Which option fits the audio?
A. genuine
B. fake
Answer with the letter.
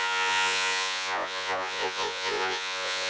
B